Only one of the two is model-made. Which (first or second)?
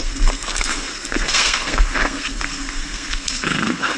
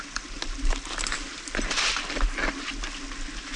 first